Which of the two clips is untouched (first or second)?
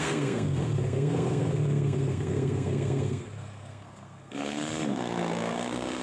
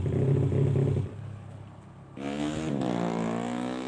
second